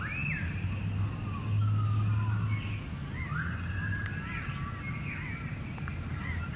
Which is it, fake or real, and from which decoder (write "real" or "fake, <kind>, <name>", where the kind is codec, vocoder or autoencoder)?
real